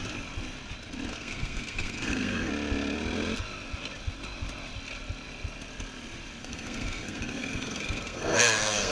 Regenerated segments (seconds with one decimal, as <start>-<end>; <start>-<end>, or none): 1.1-2.5; 6.4-8.9